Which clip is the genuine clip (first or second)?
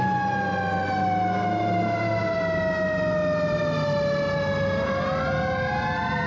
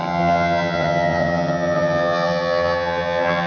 first